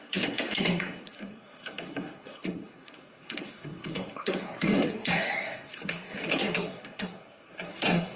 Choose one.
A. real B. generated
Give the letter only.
B